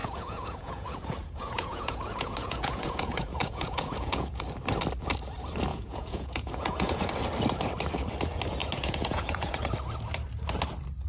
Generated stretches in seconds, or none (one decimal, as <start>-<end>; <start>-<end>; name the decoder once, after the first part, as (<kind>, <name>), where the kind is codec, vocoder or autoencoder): 0.0-4.4 (vocoder, Vocos); 5.7-7.1; 8.6-9.6

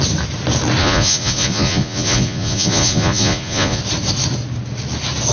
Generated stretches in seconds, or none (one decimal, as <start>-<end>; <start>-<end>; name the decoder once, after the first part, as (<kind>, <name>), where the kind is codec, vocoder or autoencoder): 0.8-3.8 (vocoder, Vocos)